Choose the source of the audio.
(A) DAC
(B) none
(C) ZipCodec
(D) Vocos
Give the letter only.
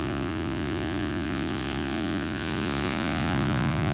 D